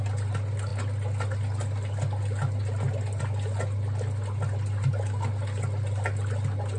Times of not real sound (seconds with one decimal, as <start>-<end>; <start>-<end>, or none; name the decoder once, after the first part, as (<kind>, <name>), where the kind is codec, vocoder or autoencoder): none